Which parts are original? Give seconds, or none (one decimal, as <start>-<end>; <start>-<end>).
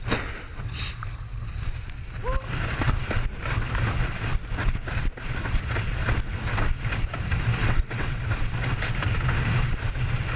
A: 0.0-7.6; 8.2-10.4